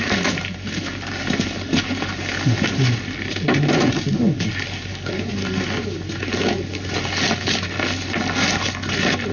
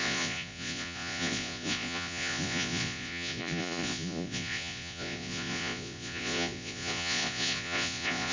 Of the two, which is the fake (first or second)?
second